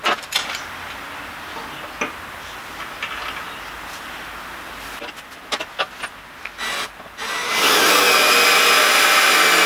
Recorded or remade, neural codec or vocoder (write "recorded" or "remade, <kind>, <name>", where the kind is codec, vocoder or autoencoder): recorded